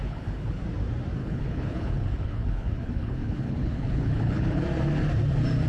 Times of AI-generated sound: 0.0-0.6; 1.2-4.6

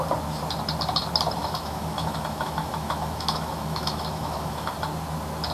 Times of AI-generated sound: 1.4-4.7

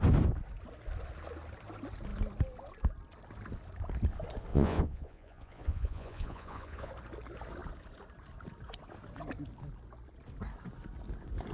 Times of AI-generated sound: 4.5-6.9

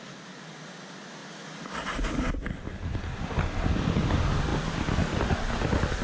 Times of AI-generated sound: none

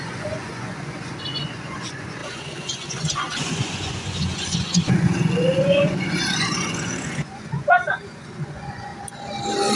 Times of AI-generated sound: 0.0-8.9

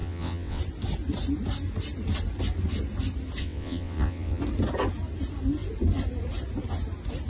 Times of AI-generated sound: 0.0-0.6; 3.4-4.4

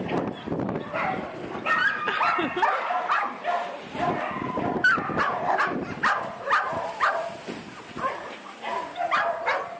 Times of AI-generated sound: none

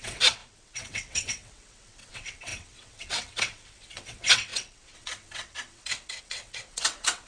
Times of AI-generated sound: 0.0-7.3